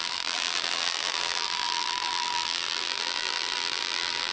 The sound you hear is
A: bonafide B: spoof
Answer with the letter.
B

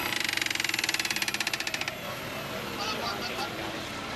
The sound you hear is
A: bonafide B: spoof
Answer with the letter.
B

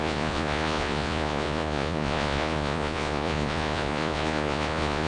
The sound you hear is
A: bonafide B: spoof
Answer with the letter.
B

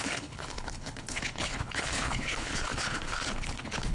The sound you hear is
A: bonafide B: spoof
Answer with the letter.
B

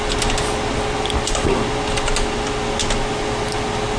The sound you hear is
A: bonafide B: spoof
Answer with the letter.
A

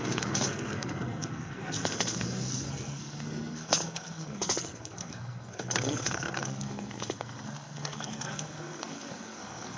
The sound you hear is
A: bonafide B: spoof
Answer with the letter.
B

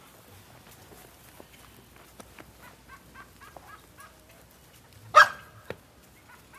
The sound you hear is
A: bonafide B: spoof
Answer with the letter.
A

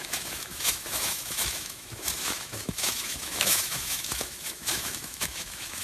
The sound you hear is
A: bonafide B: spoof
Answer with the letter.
B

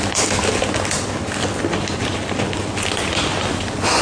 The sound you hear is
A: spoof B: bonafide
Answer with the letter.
B